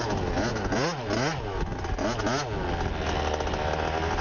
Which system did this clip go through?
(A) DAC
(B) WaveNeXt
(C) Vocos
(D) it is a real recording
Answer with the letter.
D